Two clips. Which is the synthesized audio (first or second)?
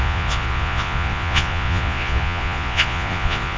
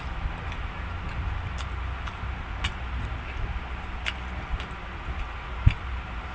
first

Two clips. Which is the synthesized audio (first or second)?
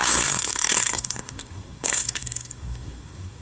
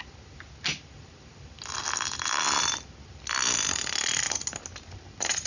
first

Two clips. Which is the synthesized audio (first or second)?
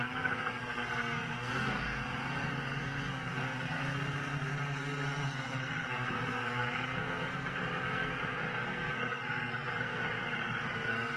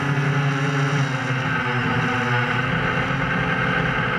first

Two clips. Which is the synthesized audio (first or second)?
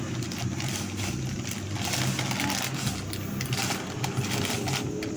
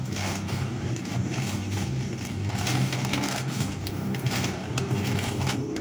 second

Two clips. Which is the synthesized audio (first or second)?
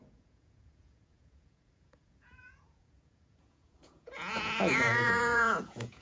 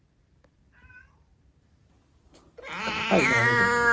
first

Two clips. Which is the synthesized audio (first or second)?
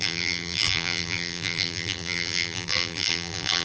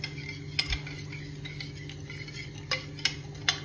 first